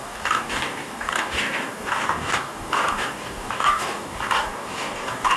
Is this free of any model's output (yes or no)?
no